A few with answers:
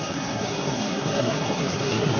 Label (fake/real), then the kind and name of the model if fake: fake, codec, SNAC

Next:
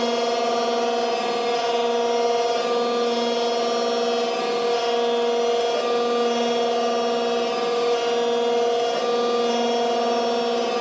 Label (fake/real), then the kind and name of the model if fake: real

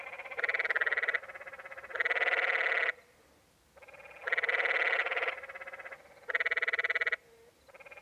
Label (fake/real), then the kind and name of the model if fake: real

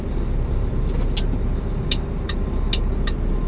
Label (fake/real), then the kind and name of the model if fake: real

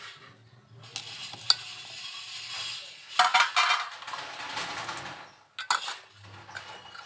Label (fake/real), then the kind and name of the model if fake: real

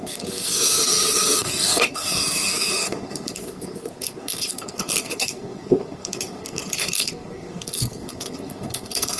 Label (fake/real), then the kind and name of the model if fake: fake, codec, SNAC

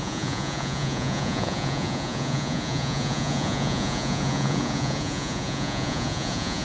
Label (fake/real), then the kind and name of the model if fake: fake, vocoder, Vocos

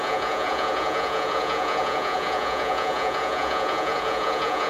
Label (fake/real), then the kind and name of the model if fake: fake, vocoder, Vocos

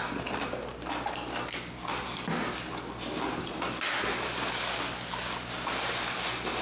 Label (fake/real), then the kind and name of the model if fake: real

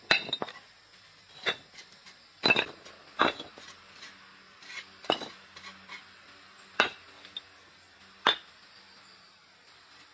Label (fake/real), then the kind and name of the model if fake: real